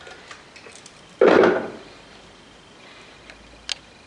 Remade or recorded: recorded